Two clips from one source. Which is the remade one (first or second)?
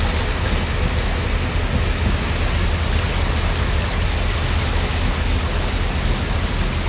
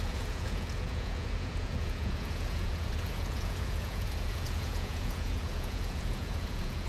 second